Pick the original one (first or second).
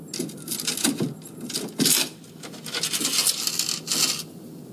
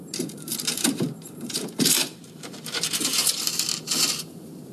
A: first